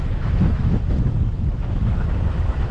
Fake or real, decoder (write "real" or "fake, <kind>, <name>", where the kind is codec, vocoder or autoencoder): fake, autoencoder, DAC-VAE